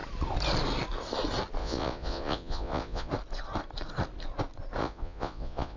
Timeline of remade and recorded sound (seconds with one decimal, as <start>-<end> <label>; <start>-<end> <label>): 0.0-1.6 recorded; 1.6-3.1 remade; 3.1-4.8 recorded; 4.8-5.8 remade